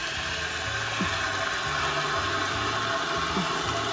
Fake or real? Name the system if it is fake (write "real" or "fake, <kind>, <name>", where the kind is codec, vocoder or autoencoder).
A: real